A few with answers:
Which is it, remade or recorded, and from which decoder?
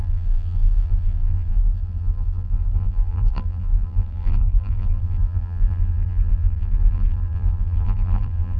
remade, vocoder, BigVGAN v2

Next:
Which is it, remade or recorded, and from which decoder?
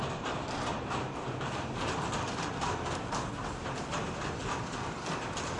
remade, vocoder, BigVGAN v2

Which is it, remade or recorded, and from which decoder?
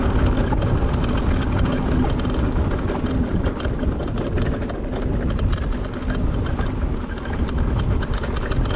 recorded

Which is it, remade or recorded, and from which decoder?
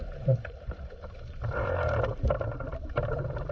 remade, vocoder, BigVGAN v2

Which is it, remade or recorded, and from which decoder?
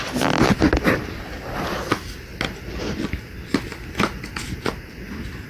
recorded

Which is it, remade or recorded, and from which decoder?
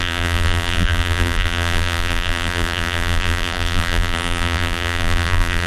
remade, vocoder, BigVGAN v2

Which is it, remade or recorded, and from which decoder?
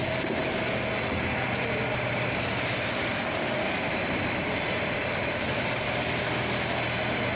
remade, vocoder, BigVGAN v2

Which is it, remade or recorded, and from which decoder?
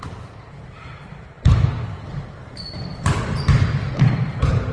remade, vocoder, BigVGAN v2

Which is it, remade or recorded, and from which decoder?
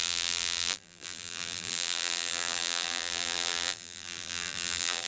remade, vocoder, BigVGAN v2